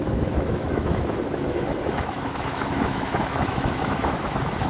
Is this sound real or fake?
fake